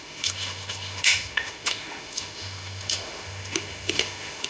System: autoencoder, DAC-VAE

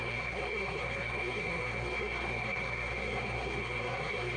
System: codec, SNAC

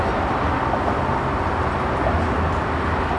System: none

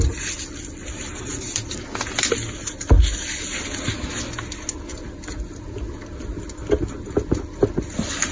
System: none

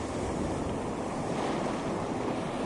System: none